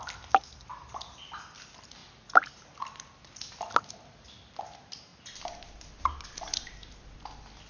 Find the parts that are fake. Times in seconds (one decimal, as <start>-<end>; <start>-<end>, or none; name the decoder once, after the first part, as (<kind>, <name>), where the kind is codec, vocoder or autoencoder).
none